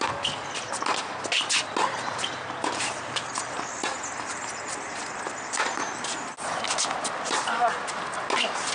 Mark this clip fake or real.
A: real